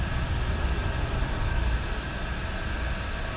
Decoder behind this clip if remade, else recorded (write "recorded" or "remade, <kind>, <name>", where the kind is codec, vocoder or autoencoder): recorded